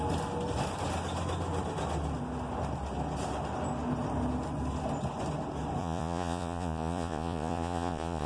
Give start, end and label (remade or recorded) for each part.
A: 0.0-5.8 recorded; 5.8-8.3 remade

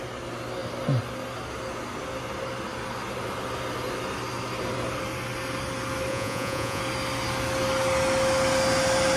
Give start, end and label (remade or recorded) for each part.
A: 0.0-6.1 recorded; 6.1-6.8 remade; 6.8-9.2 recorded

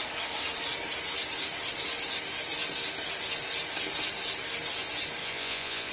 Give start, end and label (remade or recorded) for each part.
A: 0.0-5.2 recorded; 5.2-5.9 remade